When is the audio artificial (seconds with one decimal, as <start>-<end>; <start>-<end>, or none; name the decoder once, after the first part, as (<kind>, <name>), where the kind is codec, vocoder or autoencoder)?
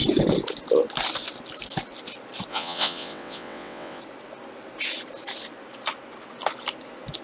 2.5-4.0 (vocoder, WaveNeXt)